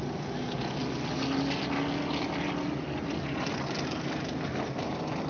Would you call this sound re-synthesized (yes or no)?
no